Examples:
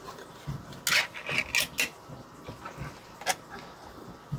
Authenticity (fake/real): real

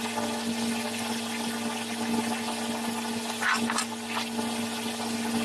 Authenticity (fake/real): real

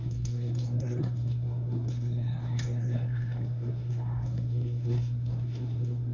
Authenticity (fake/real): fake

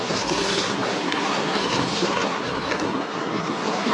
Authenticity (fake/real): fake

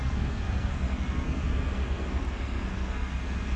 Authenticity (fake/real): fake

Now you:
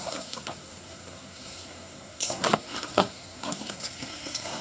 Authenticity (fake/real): fake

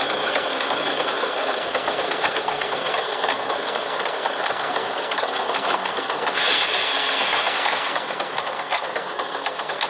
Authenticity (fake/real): fake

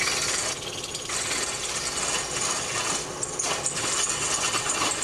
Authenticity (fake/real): real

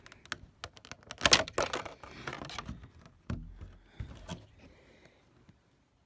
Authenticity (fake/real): real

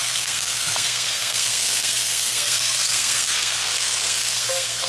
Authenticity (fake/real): fake